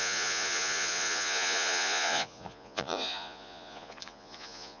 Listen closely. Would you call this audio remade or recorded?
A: remade